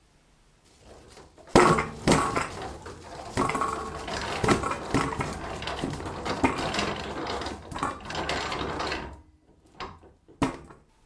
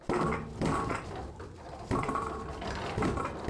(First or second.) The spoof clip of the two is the second